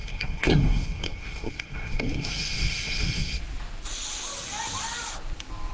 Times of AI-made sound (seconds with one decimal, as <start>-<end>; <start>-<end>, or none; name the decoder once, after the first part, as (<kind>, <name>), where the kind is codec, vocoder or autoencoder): 0.0-3.4 (codec, SNAC)